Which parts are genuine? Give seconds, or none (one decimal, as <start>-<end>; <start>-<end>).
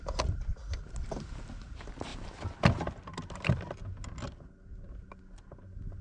0.0-6.0